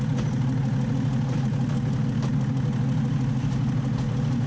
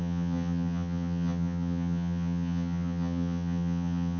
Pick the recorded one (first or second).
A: first